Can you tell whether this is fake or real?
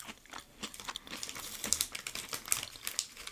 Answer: real